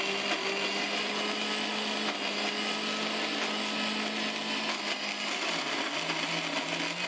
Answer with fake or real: real